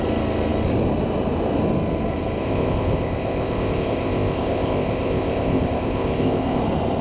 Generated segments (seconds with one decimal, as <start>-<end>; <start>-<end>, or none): 2.4-6.6